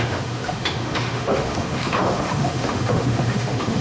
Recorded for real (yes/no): no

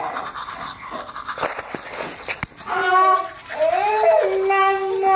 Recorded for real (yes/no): yes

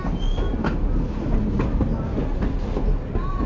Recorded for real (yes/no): yes